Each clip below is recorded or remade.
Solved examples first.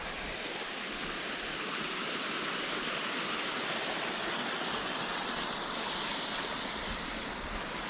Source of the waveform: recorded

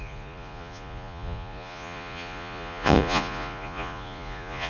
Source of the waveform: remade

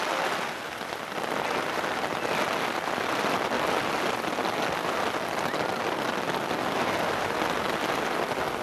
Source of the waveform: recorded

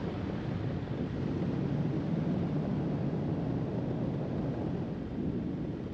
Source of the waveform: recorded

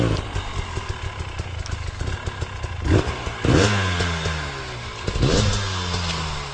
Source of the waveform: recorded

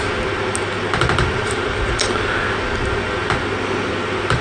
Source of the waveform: recorded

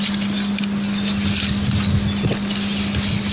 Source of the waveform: recorded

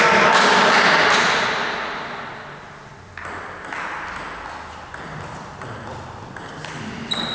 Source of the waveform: recorded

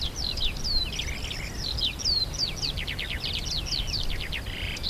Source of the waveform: recorded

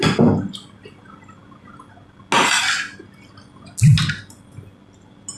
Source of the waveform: recorded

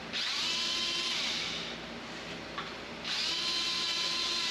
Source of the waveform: recorded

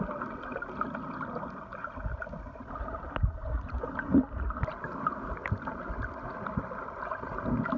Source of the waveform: recorded